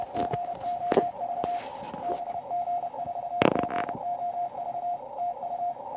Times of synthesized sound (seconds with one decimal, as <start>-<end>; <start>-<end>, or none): none